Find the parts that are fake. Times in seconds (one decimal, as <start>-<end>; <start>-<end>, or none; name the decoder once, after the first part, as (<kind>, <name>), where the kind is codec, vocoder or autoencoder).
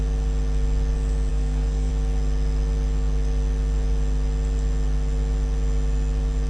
1.3-1.9 (codec, SNAC)